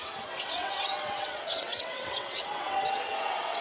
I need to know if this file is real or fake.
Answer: fake